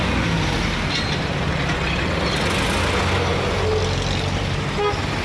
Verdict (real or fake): real